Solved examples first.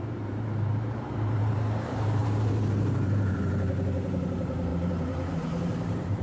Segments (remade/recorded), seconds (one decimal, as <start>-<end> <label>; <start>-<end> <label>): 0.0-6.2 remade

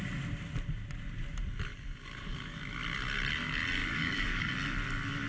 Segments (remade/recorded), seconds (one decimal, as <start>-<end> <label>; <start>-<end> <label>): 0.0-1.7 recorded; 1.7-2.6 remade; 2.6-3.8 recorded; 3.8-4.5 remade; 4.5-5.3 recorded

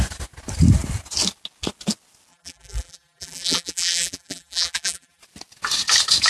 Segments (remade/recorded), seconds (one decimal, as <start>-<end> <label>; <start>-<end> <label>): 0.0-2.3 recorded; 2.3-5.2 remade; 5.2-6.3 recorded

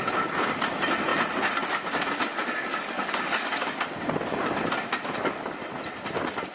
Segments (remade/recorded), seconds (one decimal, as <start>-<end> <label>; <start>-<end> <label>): 0.0-2.3 recorded; 2.3-3.8 remade; 3.8-6.5 recorded